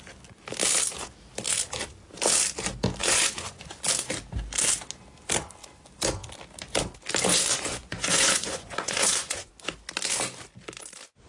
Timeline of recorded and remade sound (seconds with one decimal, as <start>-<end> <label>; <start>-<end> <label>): 0.0-3.0 recorded; 3.0-3.8 remade; 3.8-7.3 recorded; 7.3-9.5 remade; 9.5-11.3 recorded